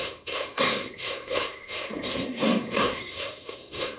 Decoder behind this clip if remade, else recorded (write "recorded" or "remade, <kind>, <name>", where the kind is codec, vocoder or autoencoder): remade, codec, SNAC